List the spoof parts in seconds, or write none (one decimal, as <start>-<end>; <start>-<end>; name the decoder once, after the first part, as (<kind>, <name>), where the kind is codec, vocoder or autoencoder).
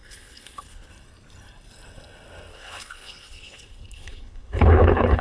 0.0-0.9 (codec, HILCodec); 2.5-5.2